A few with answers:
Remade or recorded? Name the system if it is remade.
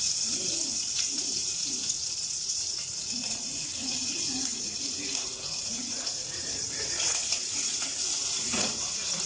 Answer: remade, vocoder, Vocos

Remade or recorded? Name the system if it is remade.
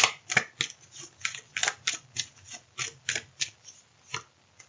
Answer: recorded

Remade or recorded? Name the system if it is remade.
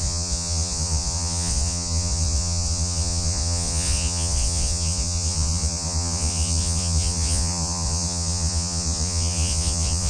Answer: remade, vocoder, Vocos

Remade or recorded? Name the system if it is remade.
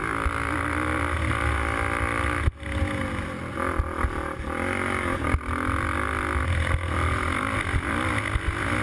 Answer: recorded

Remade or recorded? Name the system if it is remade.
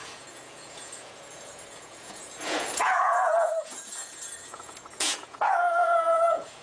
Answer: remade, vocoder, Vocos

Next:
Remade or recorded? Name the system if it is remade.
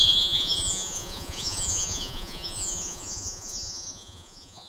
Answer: remade, vocoder, Vocos